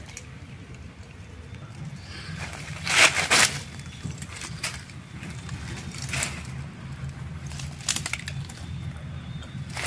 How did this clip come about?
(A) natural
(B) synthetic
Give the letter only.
A